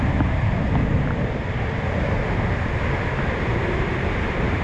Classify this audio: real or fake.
real